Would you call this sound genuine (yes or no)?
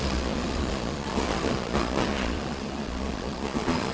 no